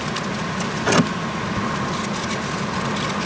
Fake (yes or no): no